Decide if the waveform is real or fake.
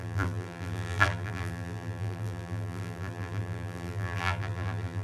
fake